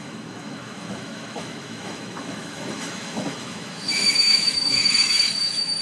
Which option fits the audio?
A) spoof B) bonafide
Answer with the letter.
A